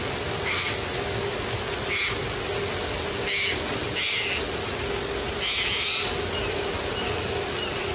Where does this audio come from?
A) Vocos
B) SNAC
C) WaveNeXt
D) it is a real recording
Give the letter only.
D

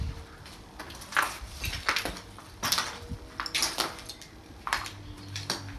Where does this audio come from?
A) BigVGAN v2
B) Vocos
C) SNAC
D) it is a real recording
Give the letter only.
D